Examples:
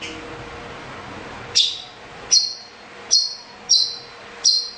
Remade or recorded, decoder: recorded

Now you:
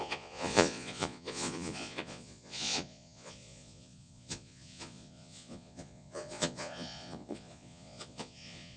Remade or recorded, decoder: remade, vocoder, Vocos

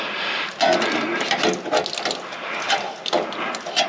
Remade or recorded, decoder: recorded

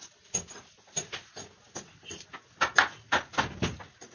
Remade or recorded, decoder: recorded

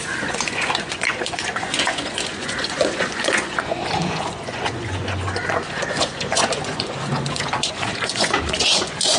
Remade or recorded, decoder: remade, vocoder, Vocos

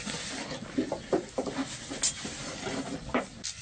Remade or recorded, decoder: recorded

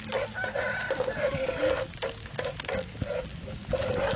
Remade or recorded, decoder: recorded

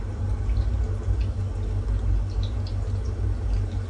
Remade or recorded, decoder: recorded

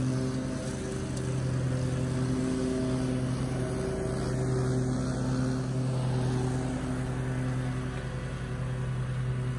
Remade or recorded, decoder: recorded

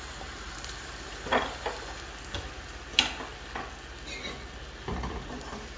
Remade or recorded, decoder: recorded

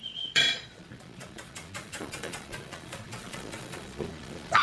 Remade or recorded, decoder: remade, vocoder, Vocos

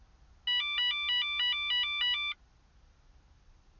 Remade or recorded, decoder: recorded